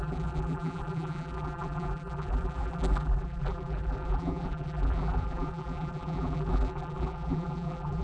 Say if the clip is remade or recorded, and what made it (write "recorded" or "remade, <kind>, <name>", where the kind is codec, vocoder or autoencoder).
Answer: remade, vocoder, BigVGAN v2